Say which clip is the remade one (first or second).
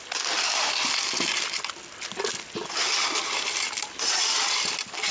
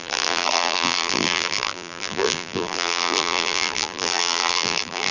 second